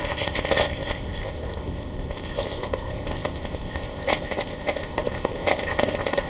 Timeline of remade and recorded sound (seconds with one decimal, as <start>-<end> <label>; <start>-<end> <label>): 0.0-6.3 remade